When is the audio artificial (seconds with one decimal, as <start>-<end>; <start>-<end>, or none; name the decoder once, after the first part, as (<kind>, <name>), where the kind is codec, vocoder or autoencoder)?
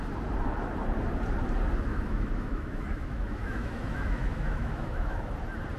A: 1.9-5.3 (autoencoder, DAC-VAE)